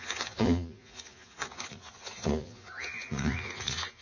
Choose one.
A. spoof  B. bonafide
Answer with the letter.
A